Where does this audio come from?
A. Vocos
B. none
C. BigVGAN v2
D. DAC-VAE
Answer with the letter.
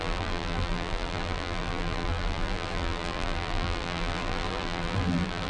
C